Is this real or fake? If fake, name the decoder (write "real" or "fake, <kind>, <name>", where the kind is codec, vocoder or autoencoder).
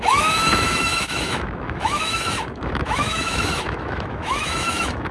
fake, autoencoder, DAC-VAE